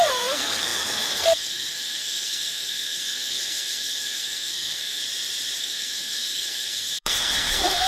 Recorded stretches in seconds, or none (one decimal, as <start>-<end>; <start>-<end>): 5.0-5.6